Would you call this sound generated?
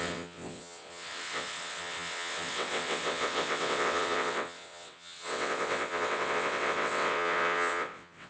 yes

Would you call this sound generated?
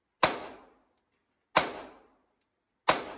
no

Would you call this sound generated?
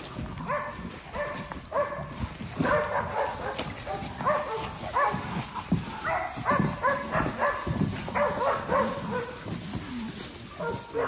no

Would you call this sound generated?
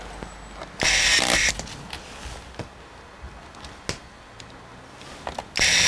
no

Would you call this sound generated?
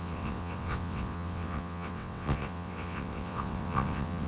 yes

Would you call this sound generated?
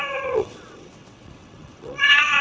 yes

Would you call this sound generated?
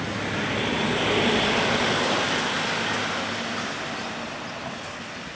no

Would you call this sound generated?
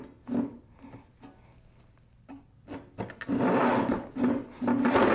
no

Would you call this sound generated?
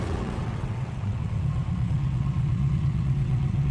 yes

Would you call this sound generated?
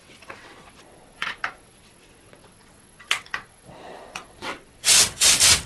yes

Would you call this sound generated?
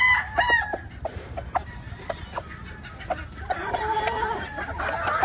no